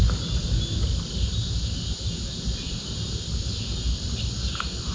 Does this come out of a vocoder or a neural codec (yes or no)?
no